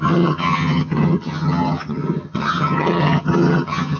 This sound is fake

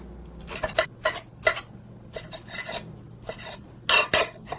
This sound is real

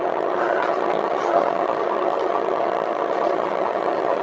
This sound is fake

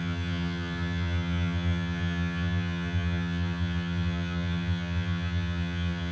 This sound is fake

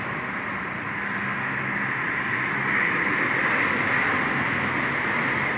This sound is real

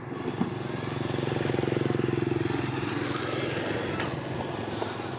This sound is real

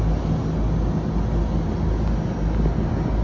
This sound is real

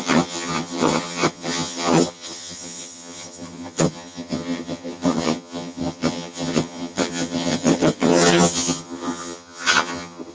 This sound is fake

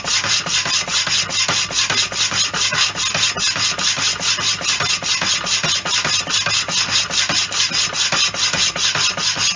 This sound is real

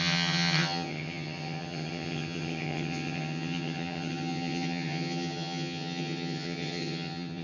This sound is fake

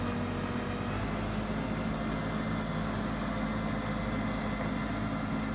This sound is real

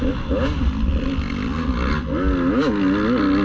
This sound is real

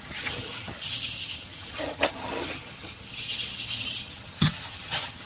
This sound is fake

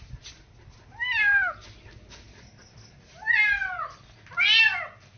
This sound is real